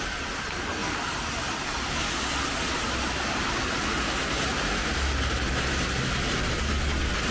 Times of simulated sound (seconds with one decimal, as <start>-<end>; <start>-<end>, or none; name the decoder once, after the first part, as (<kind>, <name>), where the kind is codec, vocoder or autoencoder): none